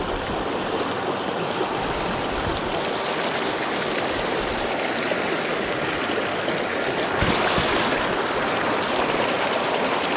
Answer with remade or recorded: recorded